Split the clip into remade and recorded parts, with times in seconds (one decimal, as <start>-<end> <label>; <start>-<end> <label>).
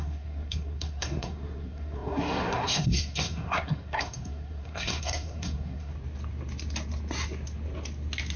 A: 0.0-5.9 remade; 5.9-8.4 recorded